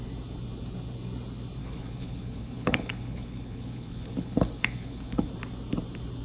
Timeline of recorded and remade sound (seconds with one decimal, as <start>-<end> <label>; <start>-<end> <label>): 0.0-1.6 recorded; 1.6-5.3 remade; 5.3-6.2 recorded